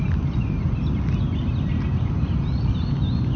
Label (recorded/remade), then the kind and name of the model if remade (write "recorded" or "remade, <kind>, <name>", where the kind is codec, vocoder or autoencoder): recorded